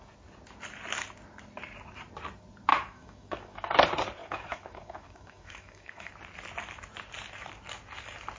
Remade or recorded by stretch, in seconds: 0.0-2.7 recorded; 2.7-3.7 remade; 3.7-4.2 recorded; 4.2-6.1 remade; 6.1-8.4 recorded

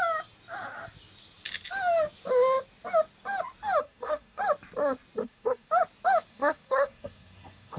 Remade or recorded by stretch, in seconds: 0.0-3.8 recorded; 3.8-4.4 remade; 4.4-5.2 recorded; 5.2-5.7 remade; 5.7-6.3 recorded; 6.3-7.8 remade

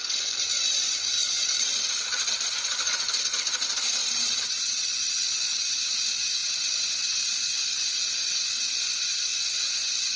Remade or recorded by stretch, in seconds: 0.0-1.2 recorded; 1.2-3.1 remade; 3.1-9.3 recorded; 9.3-10.2 remade